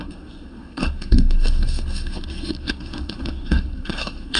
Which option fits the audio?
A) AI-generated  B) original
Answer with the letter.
A